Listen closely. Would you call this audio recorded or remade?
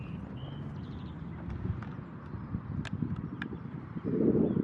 recorded